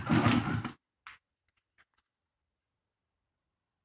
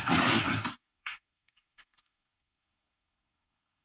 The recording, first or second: first